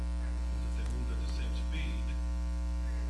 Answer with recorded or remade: recorded